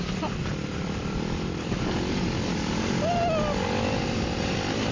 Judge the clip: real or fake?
real